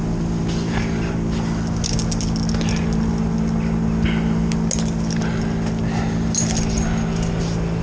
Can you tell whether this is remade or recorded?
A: recorded